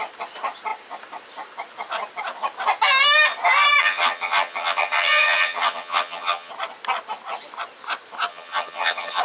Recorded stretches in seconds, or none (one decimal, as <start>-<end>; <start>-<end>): 0.0-3.8; 6.5-8.3

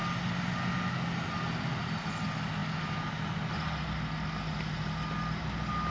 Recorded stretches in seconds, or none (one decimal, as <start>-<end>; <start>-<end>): 0.0-5.9

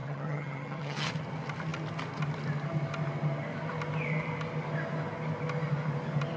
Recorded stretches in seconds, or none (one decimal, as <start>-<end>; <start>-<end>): 1.1-6.4